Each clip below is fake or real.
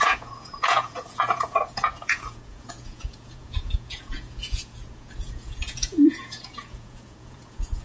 fake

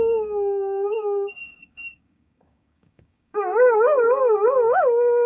fake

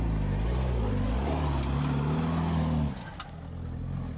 real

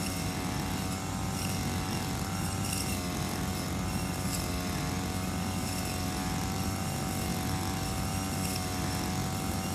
real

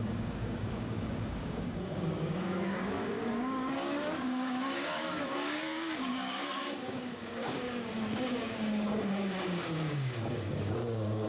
fake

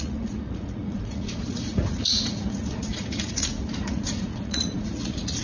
fake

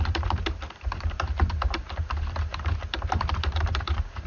fake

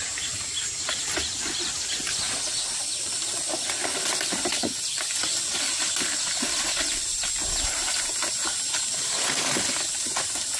real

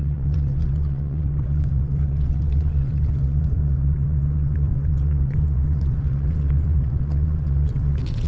fake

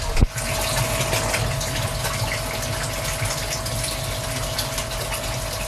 real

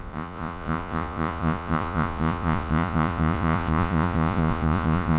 fake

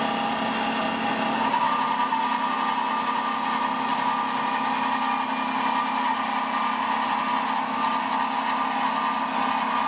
real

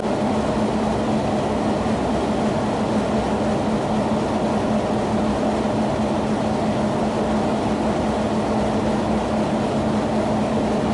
real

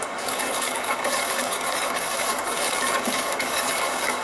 fake